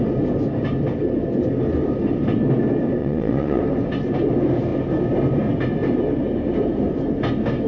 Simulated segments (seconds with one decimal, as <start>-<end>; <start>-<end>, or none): 3.0-3.6